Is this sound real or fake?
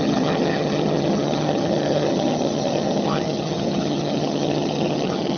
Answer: fake